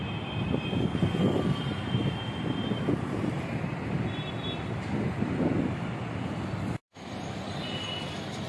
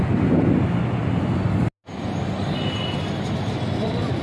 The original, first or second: second